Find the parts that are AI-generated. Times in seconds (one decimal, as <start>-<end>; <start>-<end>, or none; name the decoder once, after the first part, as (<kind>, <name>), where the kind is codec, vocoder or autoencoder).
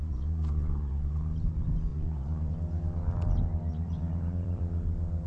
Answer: 0.0-1.2 (vocoder, Vocos); 1.9-2.5; 3.7-4.6